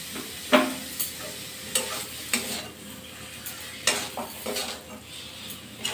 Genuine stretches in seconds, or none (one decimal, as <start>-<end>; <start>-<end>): 0.0-5.9